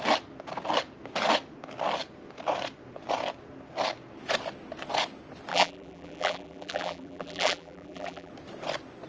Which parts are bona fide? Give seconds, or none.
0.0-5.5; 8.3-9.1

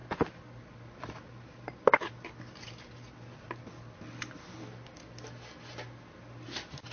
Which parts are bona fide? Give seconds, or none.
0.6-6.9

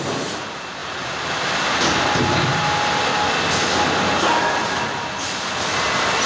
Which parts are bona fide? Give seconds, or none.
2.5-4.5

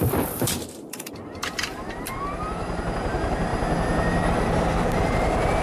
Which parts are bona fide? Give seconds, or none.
3.5-4.3

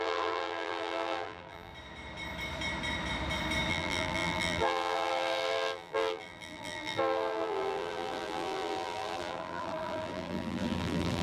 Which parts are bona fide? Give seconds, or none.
1.7-3.7

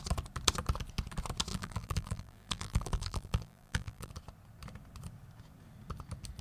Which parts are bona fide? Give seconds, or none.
0.0-1.5; 4.1-6.4

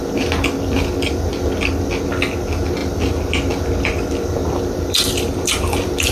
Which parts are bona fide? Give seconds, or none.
0.0-4.4

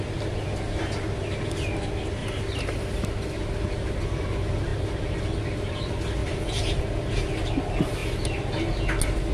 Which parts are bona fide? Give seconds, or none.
0.0-2.2; 3.0-6.2; 6.8-9.3